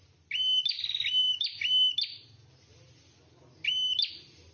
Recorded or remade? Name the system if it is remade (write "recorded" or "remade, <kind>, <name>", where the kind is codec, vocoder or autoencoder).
recorded